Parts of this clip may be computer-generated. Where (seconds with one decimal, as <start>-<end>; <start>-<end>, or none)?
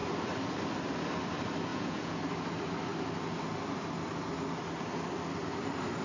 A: 1.7-2.2